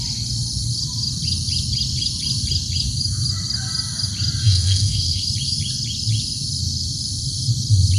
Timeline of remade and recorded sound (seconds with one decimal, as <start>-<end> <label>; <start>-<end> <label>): 0.0-4.4 recorded; 4.4-5.2 remade; 5.2-8.0 recorded